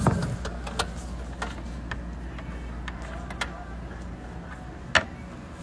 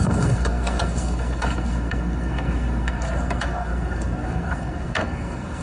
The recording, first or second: first